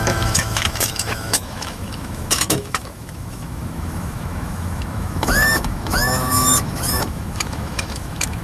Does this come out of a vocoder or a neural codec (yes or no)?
yes